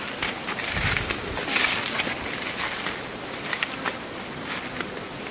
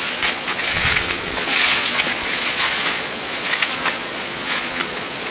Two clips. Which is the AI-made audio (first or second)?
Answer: second